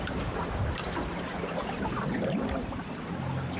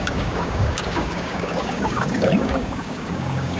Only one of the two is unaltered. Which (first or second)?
first